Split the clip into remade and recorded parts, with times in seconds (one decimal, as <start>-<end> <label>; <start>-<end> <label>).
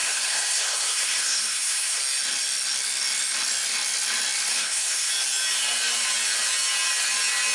0.0-2.0 remade; 2.0-4.5 recorded; 4.5-5.1 remade; 5.1-7.5 recorded